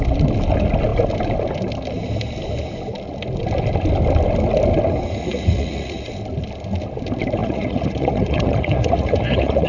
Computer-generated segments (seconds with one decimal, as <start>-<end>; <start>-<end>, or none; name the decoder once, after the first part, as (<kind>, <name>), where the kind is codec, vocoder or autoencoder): 5.2-6.1 (vocoder, Vocos); 7.4-9.7

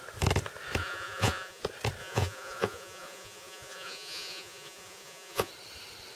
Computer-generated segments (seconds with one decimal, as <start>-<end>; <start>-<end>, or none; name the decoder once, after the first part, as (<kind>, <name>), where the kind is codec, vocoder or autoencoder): 0.8-1.6 (vocoder, Vocos); 2.0-5.5

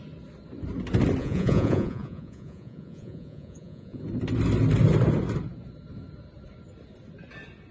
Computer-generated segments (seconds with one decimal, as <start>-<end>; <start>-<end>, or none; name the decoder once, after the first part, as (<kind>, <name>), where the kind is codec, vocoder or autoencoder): 1.2-4.0 (vocoder, Vocos)

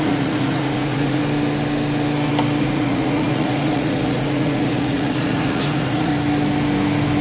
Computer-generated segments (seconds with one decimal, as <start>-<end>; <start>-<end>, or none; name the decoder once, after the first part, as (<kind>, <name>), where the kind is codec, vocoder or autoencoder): 0.0-1.2 (vocoder, Vocos); 2.6-6.1

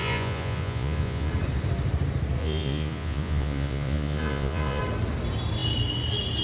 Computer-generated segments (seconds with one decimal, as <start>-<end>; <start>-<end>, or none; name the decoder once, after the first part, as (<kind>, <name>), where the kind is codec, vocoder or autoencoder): 0.0-1.3 (vocoder, Vocos); 2.4-4.8